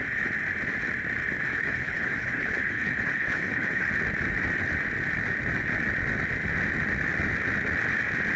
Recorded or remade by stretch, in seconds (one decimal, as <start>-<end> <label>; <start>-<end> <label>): 0.0-1.5 recorded; 1.5-3.9 remade; 3.9-8.4 recorded